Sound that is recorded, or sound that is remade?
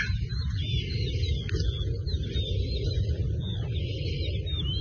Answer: recorded